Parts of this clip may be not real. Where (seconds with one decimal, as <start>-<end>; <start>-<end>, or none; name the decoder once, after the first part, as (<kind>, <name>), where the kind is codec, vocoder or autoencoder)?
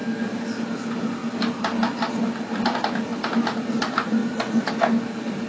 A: none